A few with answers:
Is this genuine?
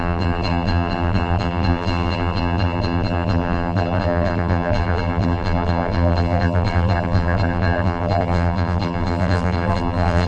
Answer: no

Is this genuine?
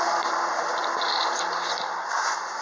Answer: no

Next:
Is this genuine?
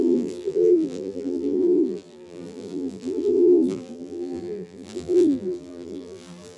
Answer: no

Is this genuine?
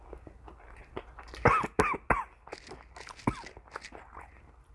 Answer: yes